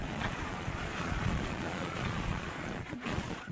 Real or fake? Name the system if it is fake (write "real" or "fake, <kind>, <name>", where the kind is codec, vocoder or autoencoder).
fake, vocoder, Vocos